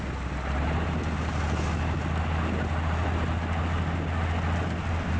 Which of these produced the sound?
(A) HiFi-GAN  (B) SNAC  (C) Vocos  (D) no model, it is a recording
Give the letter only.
D